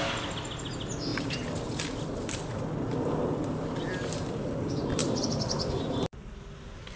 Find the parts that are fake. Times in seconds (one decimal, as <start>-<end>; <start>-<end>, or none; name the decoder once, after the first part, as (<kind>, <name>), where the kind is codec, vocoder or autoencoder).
none